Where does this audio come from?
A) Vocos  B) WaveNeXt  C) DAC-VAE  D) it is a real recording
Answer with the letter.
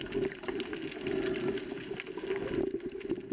D